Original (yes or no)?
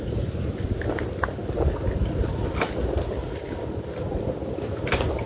yes